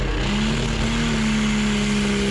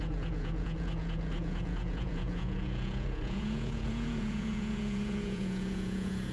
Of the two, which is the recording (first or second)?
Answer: first